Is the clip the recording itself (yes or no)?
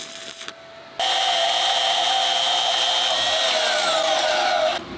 yes